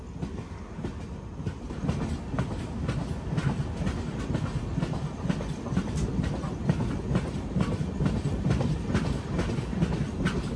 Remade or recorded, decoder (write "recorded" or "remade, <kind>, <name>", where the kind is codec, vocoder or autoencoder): recorded